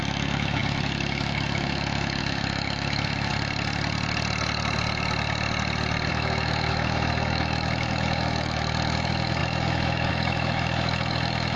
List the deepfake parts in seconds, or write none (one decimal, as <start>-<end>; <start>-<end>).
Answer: 0.0-3.3; 6.1-11.6

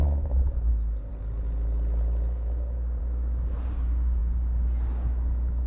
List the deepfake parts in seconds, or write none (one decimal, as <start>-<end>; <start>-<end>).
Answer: 0.0-0.7